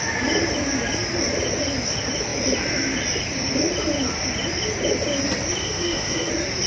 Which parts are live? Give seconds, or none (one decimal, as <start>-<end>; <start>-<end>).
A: 0.0-5.6; 6.3-6.7